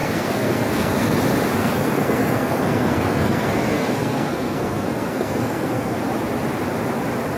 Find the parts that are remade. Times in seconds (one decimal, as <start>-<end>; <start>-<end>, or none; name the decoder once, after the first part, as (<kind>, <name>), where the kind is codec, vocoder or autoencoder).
0.0-1.2 (codec, SNAC); 1.6-6.0